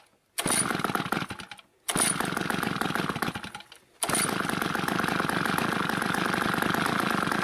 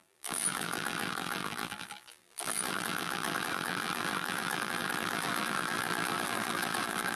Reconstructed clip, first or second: second